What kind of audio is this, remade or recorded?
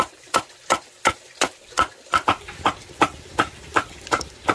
remade